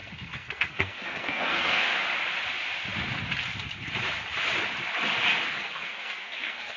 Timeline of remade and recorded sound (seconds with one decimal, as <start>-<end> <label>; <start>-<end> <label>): 0.0-1.9 remade; 1.9-5.5 recorded; 5.5-6.8 remade